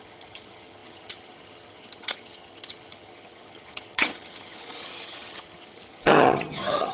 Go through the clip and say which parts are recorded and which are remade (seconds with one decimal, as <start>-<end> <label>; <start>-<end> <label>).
0.0-6.9 remade